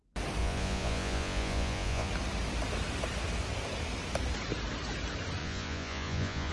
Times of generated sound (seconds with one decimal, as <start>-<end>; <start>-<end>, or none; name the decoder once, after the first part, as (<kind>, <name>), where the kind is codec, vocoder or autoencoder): 0.4-2.1 (vocoder, Vocos); 5.4-6.5